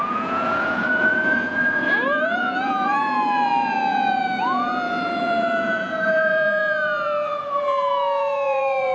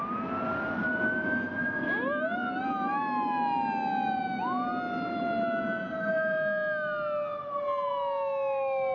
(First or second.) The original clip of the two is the second